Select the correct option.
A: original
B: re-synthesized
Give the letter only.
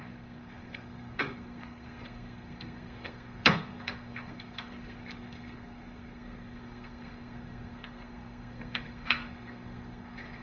B